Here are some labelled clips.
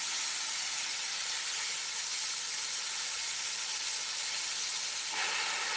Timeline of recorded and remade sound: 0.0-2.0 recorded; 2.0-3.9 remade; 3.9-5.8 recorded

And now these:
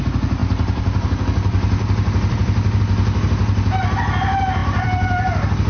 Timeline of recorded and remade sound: 0.0-0.4 recorded; 0.4-2.8 remade; 2.8-4.6 recorded; 4.6-5.7 remade

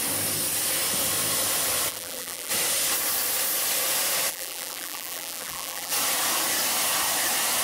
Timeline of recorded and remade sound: 0.0-1.9 recorded; 1.9-2.5 remade; 2.5-4.3 recorded; 4.3-5.9 remade; 5.9-7.6 recorded